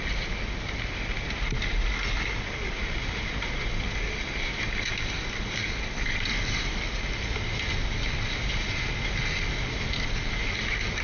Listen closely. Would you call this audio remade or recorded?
recorded